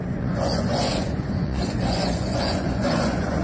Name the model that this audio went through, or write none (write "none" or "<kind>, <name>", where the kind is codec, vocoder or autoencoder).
vocoder, Vocos